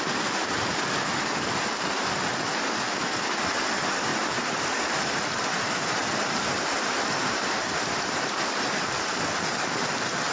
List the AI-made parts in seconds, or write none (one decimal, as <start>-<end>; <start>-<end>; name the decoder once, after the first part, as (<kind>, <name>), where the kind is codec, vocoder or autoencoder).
4.1-9.1 (vocoder, BigVGAN v2)